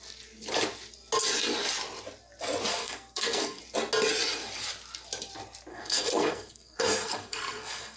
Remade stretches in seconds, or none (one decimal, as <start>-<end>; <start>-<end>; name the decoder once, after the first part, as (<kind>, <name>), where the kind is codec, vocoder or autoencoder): 2.7-3.6 (codec, SNAC); 5.7-8.0